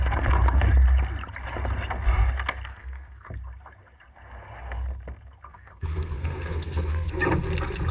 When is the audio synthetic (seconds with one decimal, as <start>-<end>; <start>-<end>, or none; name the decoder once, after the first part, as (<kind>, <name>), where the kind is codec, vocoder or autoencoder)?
2.7-3.3 (codec, SNAC); 5.5-7.1